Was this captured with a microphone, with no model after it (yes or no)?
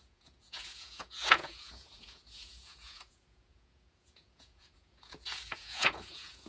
no